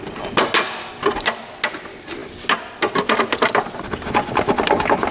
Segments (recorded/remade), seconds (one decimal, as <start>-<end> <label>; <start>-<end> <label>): 0.0-5.1 recorded